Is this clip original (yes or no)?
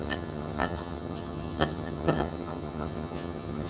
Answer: no